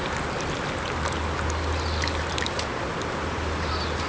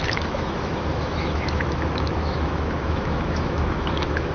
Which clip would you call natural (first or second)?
first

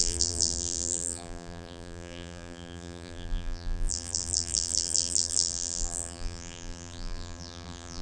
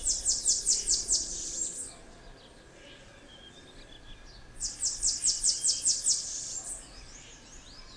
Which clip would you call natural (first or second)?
second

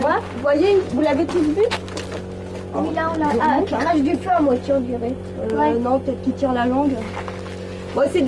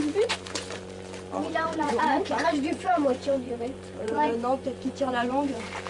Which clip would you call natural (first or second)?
first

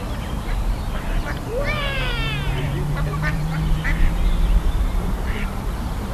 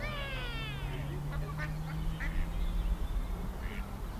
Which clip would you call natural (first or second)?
second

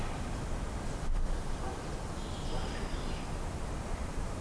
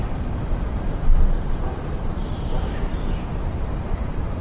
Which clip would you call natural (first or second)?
first